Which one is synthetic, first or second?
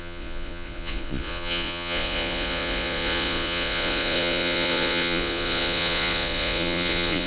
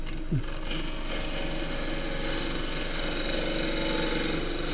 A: first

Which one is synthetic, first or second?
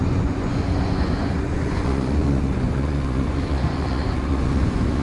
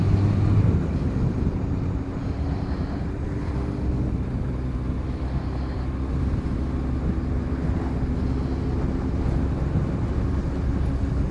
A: first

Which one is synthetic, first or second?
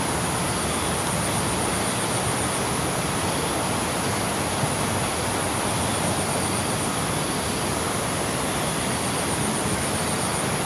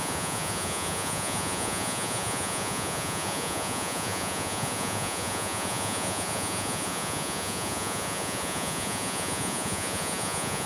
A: second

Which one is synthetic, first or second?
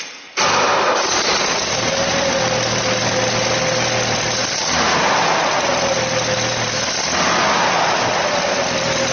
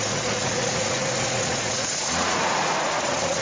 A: second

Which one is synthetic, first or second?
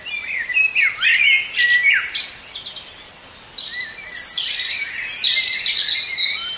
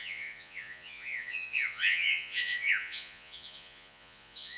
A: second